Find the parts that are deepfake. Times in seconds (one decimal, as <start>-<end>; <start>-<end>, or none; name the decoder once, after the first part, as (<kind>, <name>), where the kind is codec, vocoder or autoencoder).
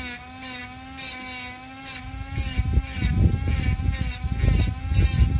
none